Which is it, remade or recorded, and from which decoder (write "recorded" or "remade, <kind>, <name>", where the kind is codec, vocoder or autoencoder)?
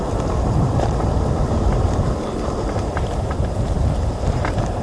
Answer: remade, vocoder, BigVGAN v2